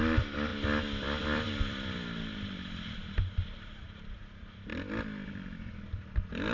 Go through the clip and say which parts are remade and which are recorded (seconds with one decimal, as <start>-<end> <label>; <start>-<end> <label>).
0.0-0.5 remade; 0.5-1.2 recorded; 1.2-6.5 remade